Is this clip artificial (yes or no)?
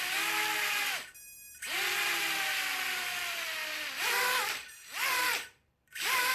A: yes